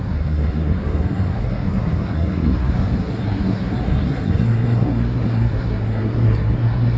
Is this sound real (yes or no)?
no